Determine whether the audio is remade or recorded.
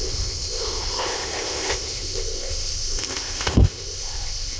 remade